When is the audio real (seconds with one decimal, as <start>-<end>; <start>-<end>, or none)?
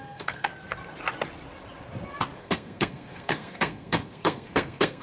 0.5-2.4